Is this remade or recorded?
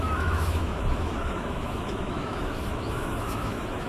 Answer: remade